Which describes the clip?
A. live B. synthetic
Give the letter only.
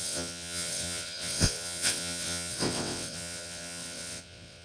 B